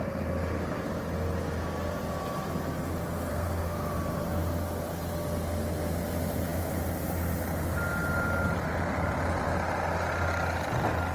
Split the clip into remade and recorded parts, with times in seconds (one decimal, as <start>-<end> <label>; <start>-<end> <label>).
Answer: 0.0-3.3 recorded; 3.3-3.9 remade; 3.9-11.1 recorded